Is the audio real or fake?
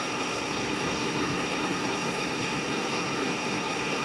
fake